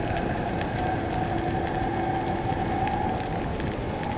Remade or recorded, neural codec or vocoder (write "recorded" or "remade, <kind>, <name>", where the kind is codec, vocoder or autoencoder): recorded